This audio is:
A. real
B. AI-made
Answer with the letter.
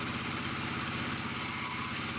A